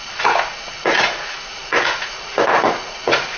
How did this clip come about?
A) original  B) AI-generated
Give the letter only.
B